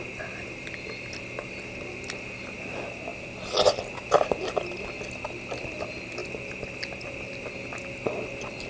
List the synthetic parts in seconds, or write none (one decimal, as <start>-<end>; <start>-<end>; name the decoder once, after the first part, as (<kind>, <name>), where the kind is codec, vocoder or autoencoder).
none